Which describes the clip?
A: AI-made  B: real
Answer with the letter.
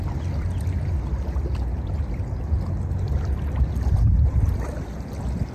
B